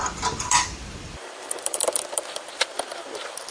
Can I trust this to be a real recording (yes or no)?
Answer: no